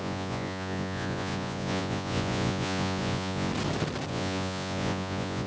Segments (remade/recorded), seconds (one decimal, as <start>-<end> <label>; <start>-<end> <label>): 0.0-3.5 remade; 3.5-4.1 recorded; 4.1-5.5 remade